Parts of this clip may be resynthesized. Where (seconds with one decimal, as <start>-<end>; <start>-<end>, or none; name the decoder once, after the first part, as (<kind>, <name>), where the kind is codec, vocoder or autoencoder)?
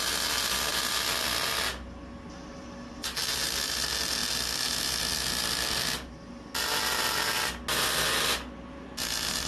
none